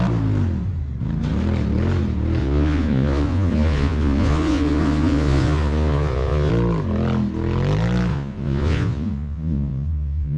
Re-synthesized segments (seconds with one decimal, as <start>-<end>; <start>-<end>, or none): 2.4-6.5; 8.1-10.4